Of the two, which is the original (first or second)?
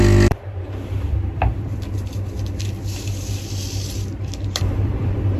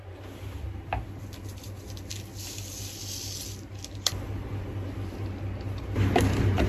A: second